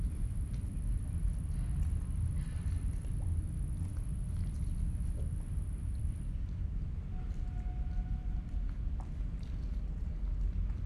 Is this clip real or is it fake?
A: real